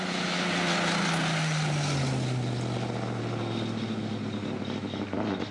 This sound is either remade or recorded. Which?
recorded